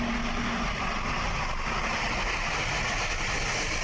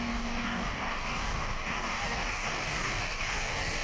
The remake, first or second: second